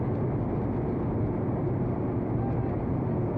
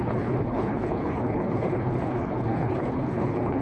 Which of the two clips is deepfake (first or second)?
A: second